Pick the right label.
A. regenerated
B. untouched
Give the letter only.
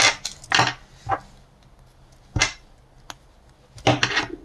B